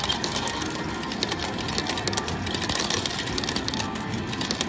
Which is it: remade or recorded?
recorded